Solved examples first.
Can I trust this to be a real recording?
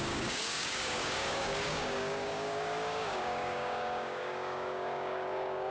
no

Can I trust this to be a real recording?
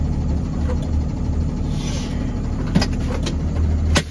yes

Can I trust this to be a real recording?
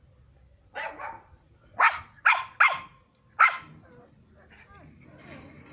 yes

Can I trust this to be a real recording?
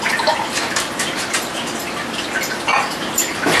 yes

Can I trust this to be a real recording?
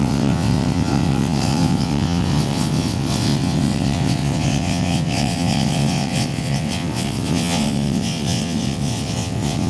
no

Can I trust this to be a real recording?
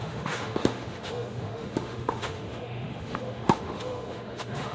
no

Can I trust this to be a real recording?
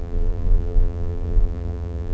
no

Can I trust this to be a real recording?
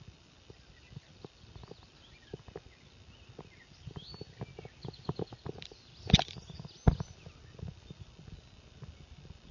yes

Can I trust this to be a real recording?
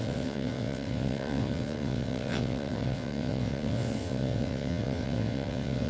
no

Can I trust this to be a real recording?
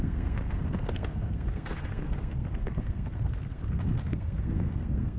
no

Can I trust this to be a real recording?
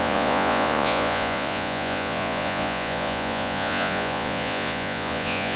no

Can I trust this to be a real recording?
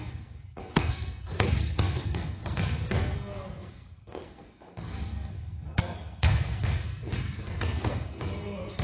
no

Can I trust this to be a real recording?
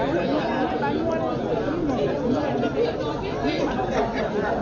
yes